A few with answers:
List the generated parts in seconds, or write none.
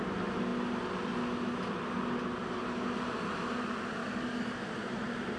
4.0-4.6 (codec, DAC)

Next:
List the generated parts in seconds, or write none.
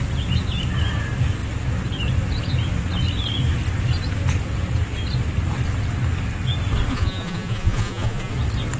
6.9-8.3 (vocoder, Vocos)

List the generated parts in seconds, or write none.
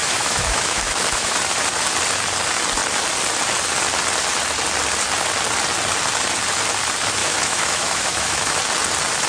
0.0-1.4 (autoencoder, DAC-VAE); 7.2-8.6